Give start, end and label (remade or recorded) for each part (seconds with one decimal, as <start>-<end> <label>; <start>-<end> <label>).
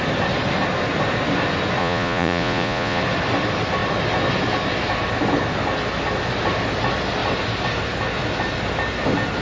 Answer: 0.0-1.8 recorded; 1.8-3.0 remade; 3.0-9.4 recorded